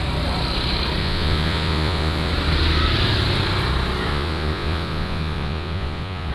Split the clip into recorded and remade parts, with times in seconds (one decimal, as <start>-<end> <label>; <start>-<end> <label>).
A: 0.0-1.0 recorded; 1.0-2.3 remade; 2.3-4.1 recorded; 4.1-6.3 remade